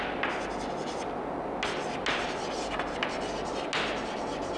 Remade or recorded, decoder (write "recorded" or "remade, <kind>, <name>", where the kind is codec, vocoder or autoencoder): recorded